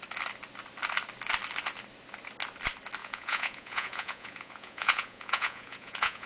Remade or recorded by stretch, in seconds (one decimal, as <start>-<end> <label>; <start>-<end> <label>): 0.0-3.0 recorded; 3.0-6.3 remade